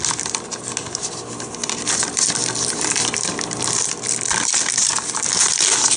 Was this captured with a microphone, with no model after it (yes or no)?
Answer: yes